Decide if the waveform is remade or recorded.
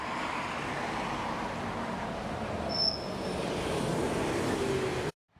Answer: recorded